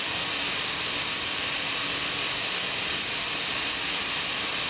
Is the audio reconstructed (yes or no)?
no